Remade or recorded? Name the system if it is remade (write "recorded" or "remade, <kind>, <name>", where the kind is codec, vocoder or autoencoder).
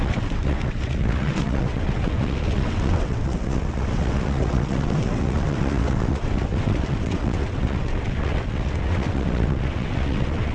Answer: remade, vocoder, WaveNeXt